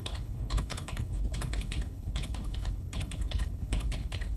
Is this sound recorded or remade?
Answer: remade